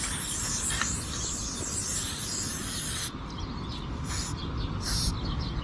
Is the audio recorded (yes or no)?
yes